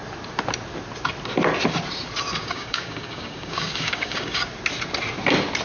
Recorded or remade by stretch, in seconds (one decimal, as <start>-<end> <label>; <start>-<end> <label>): 0.0-2.4 recorded; 2.4-4.4 remade; 4.4-5.6 recorded

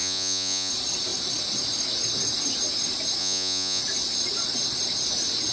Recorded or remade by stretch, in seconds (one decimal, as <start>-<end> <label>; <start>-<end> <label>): 0.0-0.7 remade; 0.7-3.2 recorded; 3.2-3.8 remade; 3.8-5.5 recorded

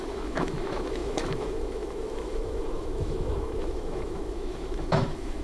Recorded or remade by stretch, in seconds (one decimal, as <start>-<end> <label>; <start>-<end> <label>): 0.0-5.4 remade

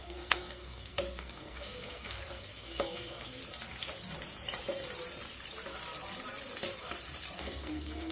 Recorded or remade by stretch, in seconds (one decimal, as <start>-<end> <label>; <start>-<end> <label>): 0.0-3.4 remade; 3.4-7.4 recorded; 7.4-8.1 remade

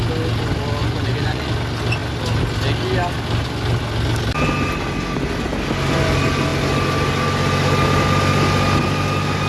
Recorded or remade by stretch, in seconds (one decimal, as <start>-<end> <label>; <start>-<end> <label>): 0.0-0.8 recorded; 0.8-1.5 remade; 1.5-9.5 recorded

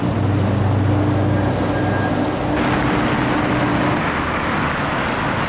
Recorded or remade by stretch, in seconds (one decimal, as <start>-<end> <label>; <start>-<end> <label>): 0.0-5.5 recorded